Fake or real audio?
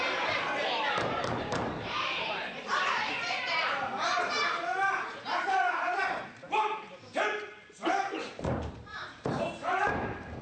fake